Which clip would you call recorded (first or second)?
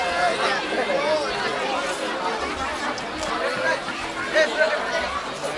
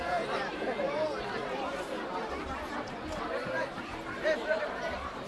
first